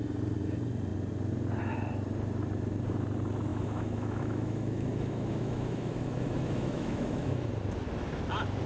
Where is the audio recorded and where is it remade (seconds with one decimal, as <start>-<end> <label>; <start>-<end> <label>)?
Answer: 0.0-3.5 recorded; 3.5-7.5 remade; 7.5-8.7 recorded